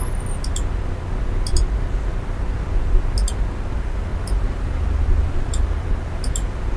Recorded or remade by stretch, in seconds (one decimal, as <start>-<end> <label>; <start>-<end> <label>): 0.0-2.1 recorded; 2.1-2.8 remade; 2.8-4.1 recorded; 4.1-6.1 remade; 6.1-6.8 recorded

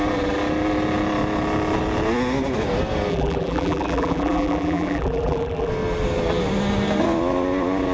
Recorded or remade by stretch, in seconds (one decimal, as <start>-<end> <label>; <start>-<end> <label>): 0.0-3.1 recorded; 3.1-5.7 remade; 5.7-7.9 recorded